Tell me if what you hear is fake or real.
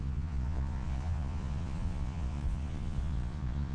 fake